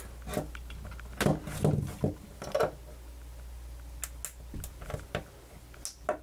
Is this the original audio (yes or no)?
yes